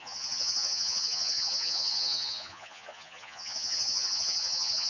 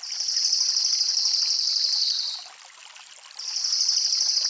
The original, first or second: second